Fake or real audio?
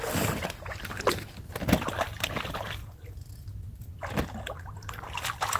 real